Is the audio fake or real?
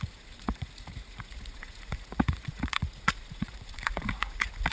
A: fake